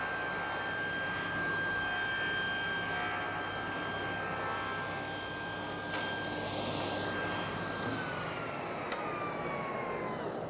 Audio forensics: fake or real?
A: real